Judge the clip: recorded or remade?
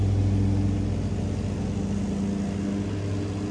recorded